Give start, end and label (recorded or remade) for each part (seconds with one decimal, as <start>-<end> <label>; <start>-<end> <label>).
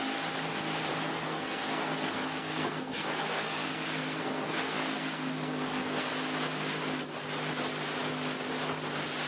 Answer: 0.0-0.9 recorded; 0.9-6.1 remade; 6.1-9.3 recorded